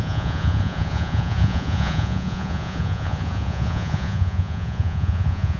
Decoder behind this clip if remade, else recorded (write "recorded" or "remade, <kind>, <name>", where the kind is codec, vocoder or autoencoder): remade, vocoder, Vocos